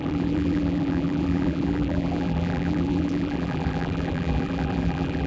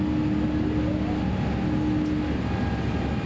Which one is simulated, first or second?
first